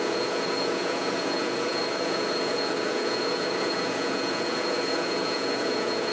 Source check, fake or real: fake